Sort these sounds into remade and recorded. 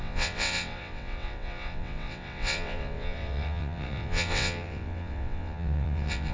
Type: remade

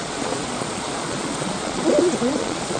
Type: remade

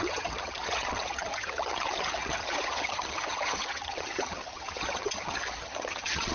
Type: remade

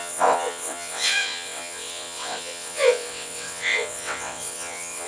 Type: remade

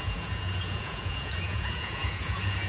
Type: remade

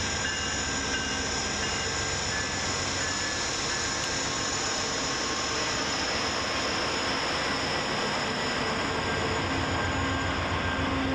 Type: recorded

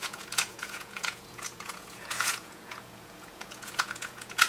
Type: remade